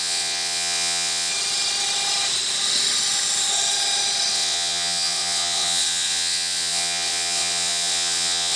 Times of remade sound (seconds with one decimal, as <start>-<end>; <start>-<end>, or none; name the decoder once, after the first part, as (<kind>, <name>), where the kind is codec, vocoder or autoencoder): 0.0-1.3 (vocoder, WaveNeXt); 4.3-8.6